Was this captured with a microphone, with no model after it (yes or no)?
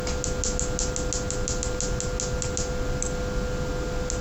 yes